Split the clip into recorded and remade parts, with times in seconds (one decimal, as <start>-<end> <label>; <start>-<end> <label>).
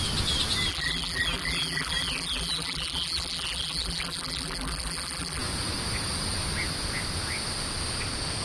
0.0-0.7 recorded; 0.7-5.4 remade; 5.4-8.4 recorded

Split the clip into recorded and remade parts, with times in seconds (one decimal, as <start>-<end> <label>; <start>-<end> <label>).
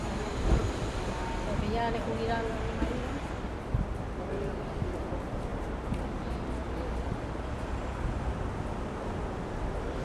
0.0-10.0 recorded